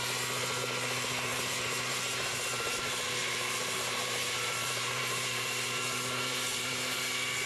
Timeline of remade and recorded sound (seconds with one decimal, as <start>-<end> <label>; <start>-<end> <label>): 0.0-1.3 recorded; 1.3-2.8 remade; 2.8-3.2 recorded; 3.2-7.1 remade; 7.1-7.5 recorded